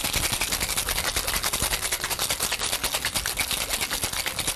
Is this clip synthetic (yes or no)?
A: no